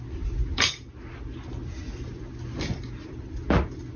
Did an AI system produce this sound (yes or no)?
no